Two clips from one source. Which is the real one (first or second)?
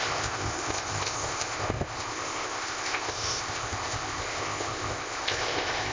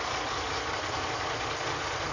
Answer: second